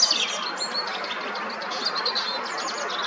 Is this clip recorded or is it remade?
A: recorded